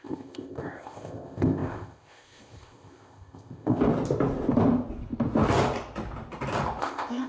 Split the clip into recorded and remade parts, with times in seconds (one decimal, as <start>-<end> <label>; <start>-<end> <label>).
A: 0.0-3.8 remade; 3.8-6.8 recorded; 6.8-7.3 remade